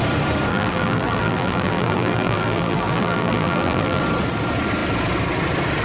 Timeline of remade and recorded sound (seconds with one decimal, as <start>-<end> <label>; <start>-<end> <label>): 0.0-0.5 recorded; 0.5-4.0 remade; 4.0-5.8 recorded

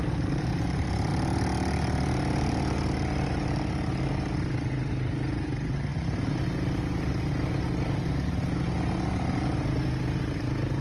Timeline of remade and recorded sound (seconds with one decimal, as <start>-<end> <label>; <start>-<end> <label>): 0.0-1.1 remade; 1.1-5.1 recorded; 5.1-5.9 remade; 5.9-10.8 recorded

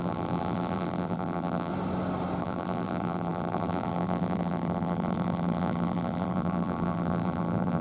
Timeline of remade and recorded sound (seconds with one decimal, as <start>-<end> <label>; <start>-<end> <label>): 0.0-1.7 remade; 1.7-2.4 recorded; 2.4-7.8 remade

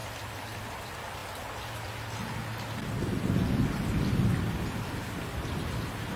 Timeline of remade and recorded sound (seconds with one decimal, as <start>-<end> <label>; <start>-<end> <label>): 0.0-6.2 recorded

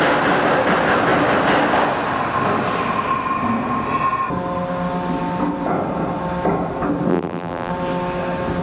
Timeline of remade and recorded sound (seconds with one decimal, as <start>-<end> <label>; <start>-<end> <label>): 0.0-7.1 recorded; 7.1-7.7 remade; 7.7-8.6 recorded